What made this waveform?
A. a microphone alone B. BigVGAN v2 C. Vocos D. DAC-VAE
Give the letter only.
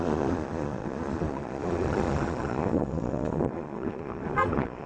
C